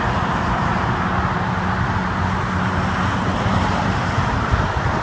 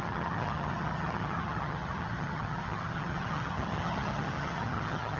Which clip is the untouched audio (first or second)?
first